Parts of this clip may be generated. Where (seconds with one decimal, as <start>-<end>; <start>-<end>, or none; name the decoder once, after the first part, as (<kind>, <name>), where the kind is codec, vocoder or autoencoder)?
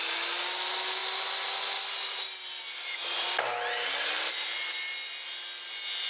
none